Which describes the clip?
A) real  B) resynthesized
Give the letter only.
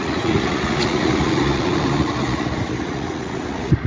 B